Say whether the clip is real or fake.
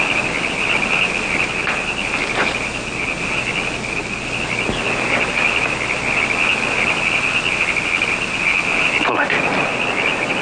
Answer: real